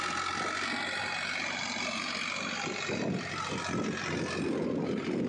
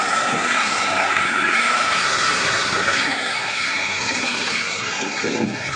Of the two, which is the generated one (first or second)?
second